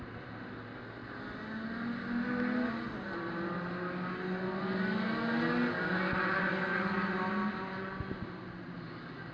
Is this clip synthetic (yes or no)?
no